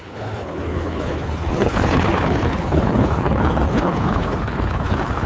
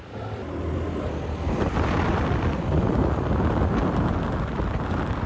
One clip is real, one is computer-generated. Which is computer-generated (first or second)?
first